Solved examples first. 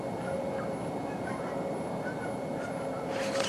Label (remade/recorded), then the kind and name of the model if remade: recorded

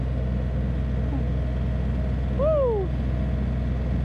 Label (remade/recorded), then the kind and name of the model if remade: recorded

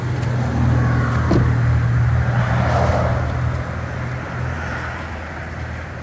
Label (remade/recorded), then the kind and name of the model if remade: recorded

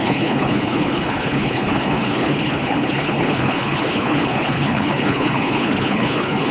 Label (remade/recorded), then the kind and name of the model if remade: remade, codec, HILCodec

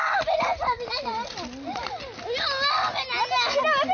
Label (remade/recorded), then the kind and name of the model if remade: recorded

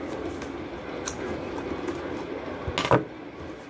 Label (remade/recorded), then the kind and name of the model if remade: recorded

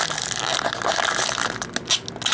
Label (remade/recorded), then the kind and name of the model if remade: recorded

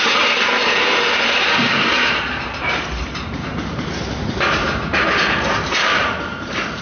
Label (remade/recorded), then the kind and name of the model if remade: remade, vocoder, BigVGAN v2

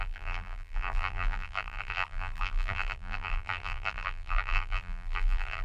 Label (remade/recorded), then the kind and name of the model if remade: remade, vocoder, BigVGAN v2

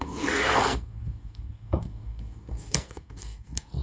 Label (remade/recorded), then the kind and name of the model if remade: remade, codec, SNAC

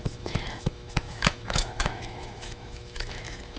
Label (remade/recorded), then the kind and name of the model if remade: remade, autoencoder, DAC-VAE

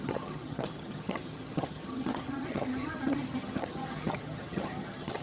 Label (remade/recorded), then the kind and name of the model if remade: remade, vocoder, HiFi-GAN